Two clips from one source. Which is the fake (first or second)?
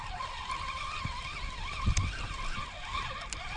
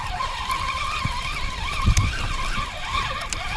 second